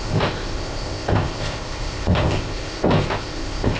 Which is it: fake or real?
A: fake